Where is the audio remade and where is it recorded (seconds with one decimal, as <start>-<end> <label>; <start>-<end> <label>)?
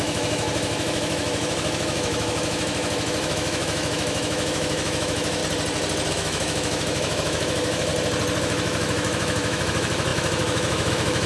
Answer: 0.0-5.4 remade; 5.4-6.1 recorded; 6.1-7.9 remade; 7.9-8.4 recorded; 8.4-11.3 remade